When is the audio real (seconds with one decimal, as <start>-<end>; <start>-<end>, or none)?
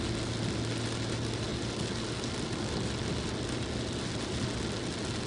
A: 0.0-5.3